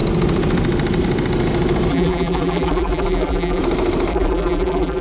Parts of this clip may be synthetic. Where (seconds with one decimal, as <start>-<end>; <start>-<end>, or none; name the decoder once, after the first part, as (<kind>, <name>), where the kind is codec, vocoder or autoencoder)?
1.9-3.6 (vocoder, BigVGAN v2); 4.1-5.0